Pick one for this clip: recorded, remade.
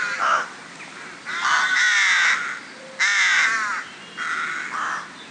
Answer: recorded